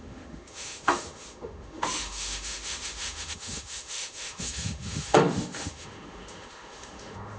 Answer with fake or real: fake